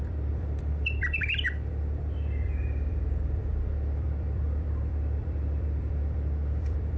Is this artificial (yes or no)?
yes